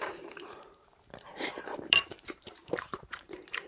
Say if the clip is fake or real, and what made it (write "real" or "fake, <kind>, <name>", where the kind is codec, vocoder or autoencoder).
fake, vocoder, BigVGAN v2